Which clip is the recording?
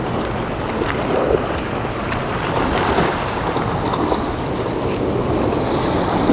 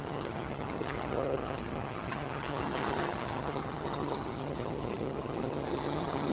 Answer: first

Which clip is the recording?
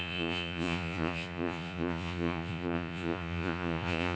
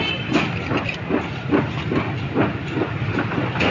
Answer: second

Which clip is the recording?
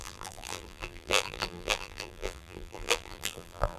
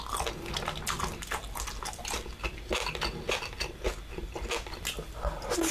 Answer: second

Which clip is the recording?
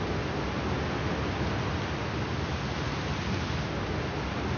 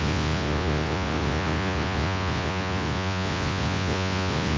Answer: first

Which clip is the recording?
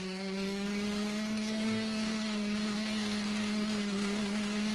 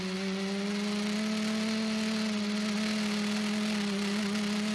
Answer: second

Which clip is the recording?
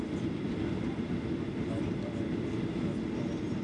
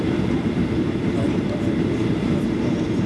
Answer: first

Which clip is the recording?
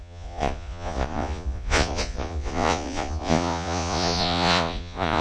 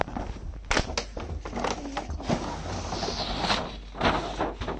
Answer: second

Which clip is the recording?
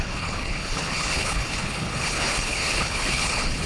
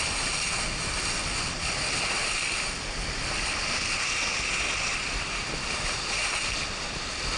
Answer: second